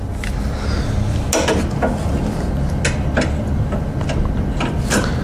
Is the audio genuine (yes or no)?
yes